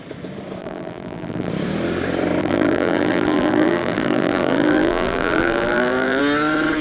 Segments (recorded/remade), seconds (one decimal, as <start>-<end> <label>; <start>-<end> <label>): 0.0-0.6 recorded; 0.6-1.5 remade; 1.5-2.4 recorded; 2.4-6.2 remade; 6.2-6.8 recorded